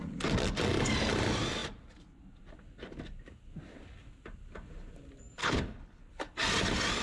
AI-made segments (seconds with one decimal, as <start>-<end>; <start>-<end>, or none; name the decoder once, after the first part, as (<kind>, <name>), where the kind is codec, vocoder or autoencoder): 5.4-6.0 (codec, HILCodec)